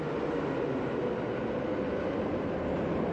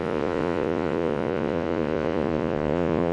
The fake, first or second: second